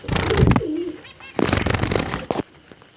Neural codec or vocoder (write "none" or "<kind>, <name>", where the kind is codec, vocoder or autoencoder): none